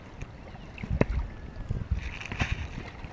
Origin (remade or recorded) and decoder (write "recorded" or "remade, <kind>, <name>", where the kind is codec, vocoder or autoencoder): recorded